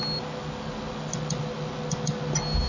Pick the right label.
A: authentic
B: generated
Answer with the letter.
A